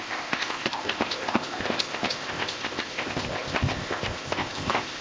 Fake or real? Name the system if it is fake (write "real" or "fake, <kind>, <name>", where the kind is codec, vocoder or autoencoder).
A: fake, codec, ZipCodec